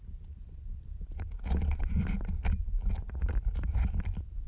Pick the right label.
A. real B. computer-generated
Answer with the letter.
A